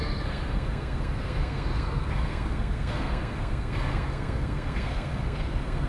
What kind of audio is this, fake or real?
fake